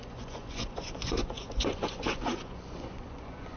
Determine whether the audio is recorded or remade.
remade